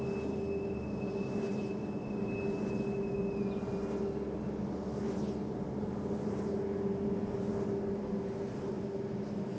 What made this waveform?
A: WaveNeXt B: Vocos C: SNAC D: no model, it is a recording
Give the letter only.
D